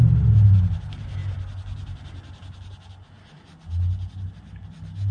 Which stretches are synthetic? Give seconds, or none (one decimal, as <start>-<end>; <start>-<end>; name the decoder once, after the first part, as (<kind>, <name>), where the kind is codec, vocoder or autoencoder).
none